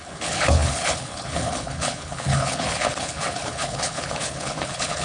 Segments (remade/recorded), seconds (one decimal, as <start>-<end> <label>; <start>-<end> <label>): 0.0-5.0 remade